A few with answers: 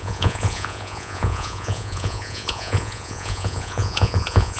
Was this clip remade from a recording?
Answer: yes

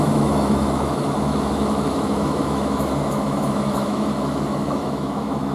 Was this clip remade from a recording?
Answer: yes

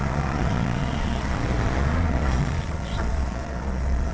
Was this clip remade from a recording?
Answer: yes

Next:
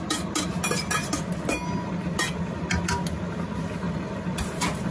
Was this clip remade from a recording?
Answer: no